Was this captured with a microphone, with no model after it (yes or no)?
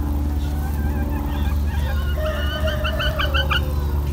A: yes